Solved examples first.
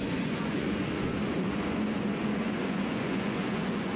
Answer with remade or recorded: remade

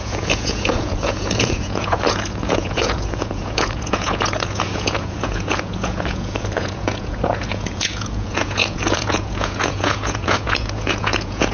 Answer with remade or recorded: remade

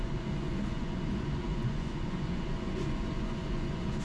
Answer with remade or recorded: remade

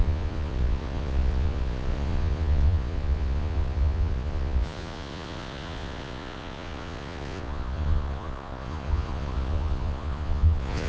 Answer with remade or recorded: remade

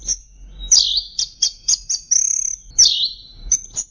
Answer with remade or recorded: recorded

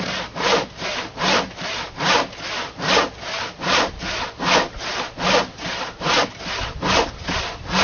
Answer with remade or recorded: recorded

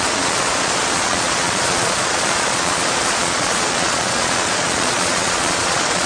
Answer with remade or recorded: remade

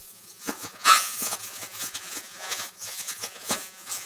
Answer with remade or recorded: remade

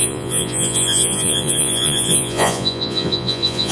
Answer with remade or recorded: remade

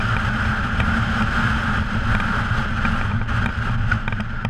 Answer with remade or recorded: recorded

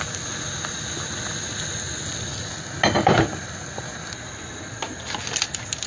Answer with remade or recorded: recorded